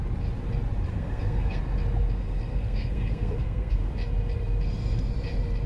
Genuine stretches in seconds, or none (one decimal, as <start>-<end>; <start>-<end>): 0.0-0.9; 1.6-2.5; 3.9-5.7